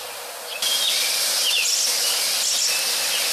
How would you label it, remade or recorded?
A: recorded